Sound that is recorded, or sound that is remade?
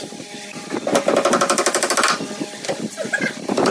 recorded